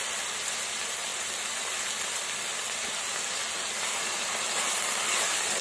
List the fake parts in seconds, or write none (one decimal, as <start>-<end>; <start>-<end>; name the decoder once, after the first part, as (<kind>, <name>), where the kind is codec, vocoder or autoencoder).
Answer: none